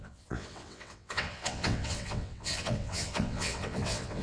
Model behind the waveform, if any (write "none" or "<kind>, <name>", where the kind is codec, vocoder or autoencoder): vocoder, WaveNeXt